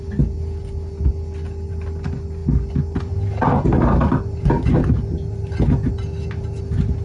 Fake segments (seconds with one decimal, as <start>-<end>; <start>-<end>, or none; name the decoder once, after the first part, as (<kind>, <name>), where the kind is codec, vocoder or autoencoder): none